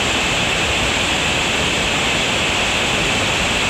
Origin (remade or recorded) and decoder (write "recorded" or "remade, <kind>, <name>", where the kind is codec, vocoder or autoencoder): recorded